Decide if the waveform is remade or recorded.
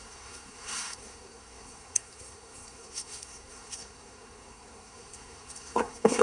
remade